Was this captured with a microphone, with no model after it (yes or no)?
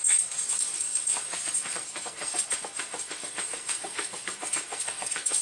no